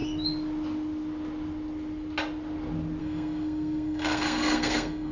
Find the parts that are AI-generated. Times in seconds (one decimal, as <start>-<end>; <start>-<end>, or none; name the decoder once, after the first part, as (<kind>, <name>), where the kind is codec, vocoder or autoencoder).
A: 3.0-5.1 (codec, SNAC)